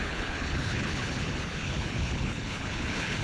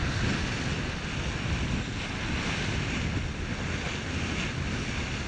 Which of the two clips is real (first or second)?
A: second